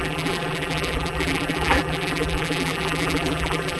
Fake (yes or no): yes